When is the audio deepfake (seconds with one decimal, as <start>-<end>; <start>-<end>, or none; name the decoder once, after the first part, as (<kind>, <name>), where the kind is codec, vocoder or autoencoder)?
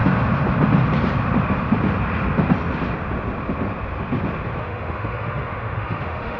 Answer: 4.6-6.4 (autoencoder, DAC-VAE)